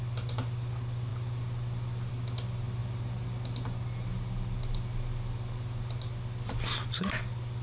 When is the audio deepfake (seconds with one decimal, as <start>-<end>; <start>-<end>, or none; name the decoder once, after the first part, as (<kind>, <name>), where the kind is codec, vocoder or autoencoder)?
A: none